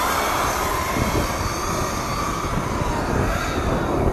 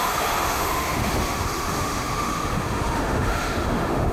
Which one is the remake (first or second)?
second